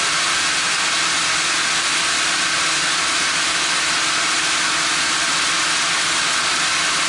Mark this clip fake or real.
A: real